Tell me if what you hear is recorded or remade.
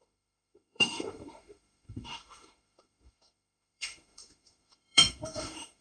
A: remade